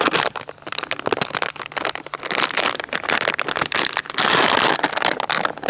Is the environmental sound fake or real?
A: real